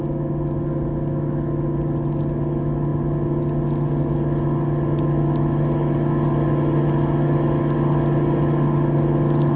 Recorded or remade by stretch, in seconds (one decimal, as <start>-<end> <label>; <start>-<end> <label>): 0.0-9.6 recorded